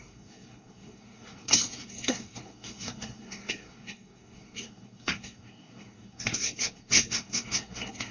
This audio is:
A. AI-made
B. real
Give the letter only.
A